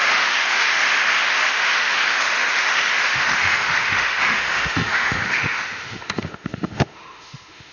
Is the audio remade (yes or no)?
yes